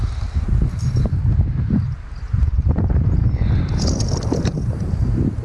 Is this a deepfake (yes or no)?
no